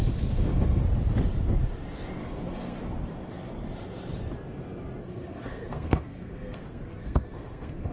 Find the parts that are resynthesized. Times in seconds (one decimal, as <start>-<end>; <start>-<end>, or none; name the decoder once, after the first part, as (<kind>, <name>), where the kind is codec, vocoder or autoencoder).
0.0-0.8 (codec, SNAC); 2.2-2.8; 5.0-7.9